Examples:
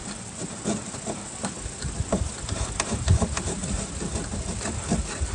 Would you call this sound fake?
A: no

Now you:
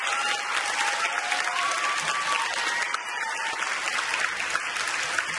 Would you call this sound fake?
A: no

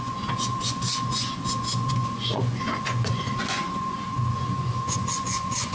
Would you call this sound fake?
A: yes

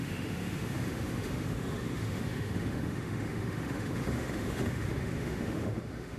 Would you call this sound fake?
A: yes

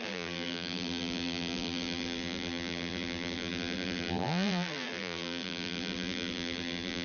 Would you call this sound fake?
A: yes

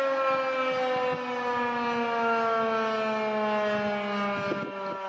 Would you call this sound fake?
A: no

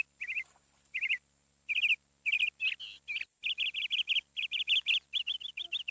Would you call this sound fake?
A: no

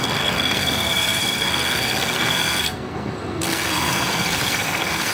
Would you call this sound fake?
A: yes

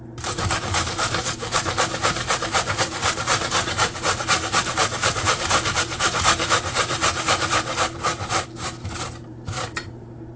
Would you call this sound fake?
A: yes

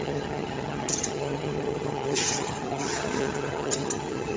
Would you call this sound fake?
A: yes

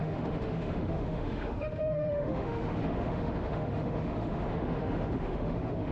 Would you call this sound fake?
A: yes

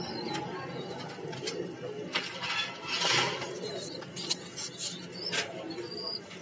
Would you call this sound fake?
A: no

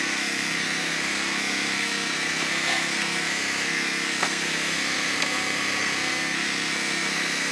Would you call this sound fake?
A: yes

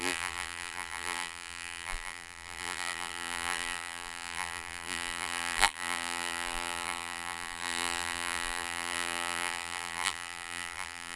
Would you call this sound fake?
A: yes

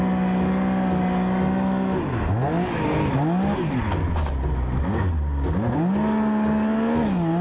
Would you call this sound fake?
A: no